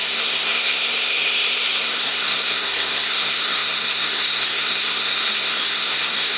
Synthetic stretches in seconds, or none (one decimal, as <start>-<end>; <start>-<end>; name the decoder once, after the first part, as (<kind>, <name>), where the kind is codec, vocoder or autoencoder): 0.0-6.4 (codec, SNAC)